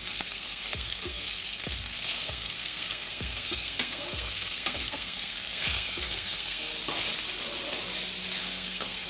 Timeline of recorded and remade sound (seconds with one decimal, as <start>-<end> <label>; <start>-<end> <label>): 0.0-6.7 remade; 6.7-8.4 recorded; 8.4-9.1 remade